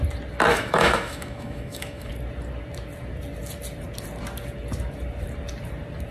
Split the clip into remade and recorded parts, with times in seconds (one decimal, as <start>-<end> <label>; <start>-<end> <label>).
0.0-0.5 recorded; 0.5-2.1 remade; 2.1-6.1 recorded